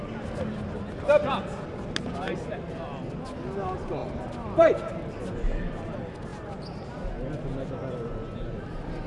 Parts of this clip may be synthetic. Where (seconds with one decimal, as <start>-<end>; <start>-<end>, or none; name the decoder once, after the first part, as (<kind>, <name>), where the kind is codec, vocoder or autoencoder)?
4.0-5.2 (vocoder, BigVGAN v2)

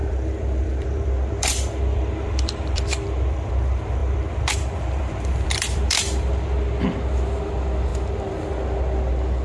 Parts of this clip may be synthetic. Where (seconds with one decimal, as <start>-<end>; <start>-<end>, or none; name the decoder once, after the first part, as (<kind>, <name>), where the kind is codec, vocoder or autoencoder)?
0.0-3.5 (vocoder, BigVGAN v2); 4.0-6.5

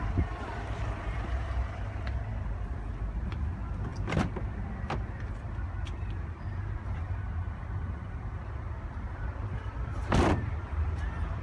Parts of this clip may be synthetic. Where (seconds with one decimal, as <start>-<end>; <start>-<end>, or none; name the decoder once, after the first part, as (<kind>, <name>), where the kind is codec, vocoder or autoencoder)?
0.0-11.4 (vocoder, BigVGAN v2)

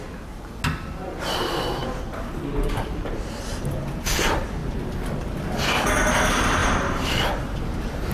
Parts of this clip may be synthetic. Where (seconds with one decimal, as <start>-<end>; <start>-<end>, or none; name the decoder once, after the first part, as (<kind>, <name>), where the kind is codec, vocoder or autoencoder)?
1.8-2.7 (vocoder, BigVGAN v2); 6.6-8.1

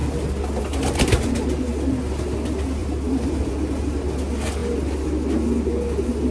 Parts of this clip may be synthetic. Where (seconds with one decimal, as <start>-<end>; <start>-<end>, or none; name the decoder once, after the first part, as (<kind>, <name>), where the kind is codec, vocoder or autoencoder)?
2.8-3.5 (vocoder, BigVGAN v2)

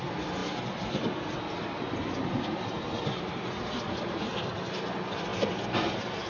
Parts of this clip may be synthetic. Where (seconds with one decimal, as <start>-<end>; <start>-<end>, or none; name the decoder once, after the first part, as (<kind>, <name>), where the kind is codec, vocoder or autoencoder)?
0.0-6.3 (vocoder, BigVGAN v2)

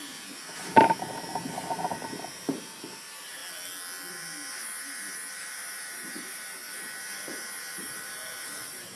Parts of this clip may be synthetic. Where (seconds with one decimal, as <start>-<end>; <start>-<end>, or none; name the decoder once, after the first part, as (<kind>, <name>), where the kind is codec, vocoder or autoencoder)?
0.0-3.4 (vocoder, BigVGAN v2); 4.1-8.9

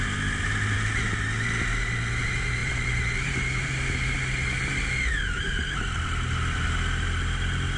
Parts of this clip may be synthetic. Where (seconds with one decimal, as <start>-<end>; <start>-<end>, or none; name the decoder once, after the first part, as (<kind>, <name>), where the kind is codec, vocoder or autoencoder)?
2.6-3.4 (vocoder, BigVGAN v2)